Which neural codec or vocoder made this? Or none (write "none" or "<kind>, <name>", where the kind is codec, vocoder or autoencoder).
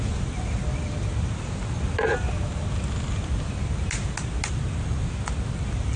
none